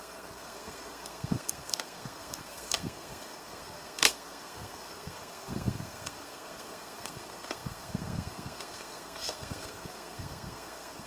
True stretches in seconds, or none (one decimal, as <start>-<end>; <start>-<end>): none